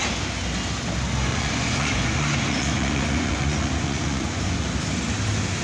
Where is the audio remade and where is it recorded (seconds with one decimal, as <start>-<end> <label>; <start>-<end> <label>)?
0.0-1.3 recorded; 1.3-4.7 remade; 4.7-5.6 recorded